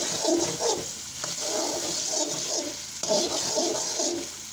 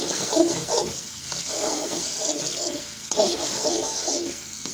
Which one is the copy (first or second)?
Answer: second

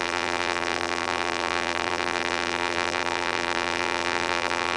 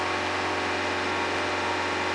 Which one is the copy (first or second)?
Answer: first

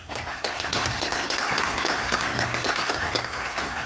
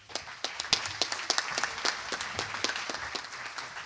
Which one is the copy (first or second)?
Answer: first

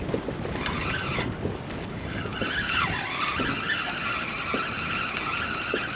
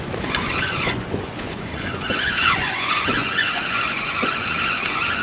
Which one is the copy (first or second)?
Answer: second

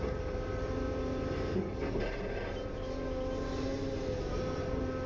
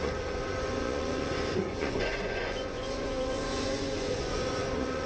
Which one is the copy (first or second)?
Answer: second